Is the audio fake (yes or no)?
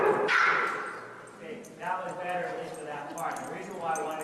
no